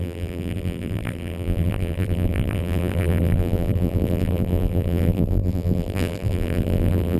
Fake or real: fake